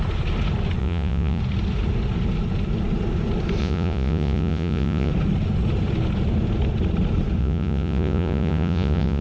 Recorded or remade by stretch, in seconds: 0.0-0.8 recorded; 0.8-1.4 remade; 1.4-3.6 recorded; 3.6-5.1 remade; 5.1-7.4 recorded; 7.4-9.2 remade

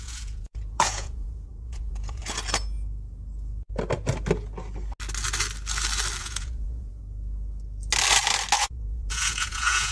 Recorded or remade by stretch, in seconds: 0.0-2.2 remade; 2.2-6.2 recorded; 6.2-7.0 remade; 7.0-8.6 recorded; 8.6-9.9 remade

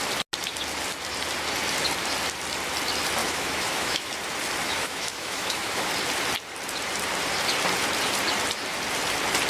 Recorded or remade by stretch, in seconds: 0.0-3.2 recorded; 3.2-4.1 remade; 4.1-4.6 recorded; 4.6-5.9 remade; 5.9-9.5 recorded